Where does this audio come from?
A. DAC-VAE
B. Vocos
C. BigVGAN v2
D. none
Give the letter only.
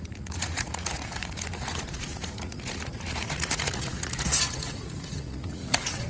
B